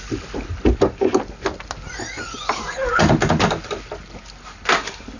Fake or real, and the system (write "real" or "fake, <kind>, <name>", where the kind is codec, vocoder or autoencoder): real